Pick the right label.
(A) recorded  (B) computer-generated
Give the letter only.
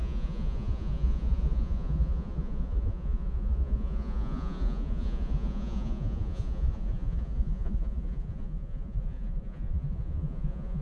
B